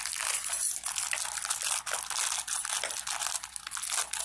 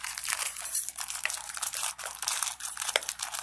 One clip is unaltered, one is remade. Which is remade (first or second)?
second